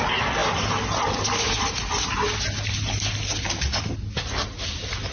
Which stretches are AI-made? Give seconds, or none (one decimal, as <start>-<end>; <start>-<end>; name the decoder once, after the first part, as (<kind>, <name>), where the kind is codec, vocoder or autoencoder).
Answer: none